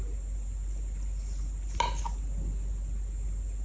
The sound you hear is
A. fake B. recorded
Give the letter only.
B